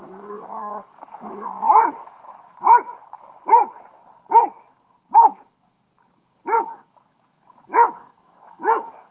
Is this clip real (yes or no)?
no